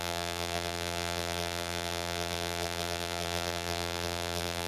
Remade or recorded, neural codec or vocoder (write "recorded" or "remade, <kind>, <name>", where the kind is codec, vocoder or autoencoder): remade, vocoder, BigVGAN v2